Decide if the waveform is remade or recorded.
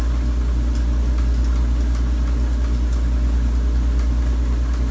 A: recorded